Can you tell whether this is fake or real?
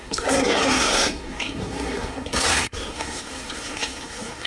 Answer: fake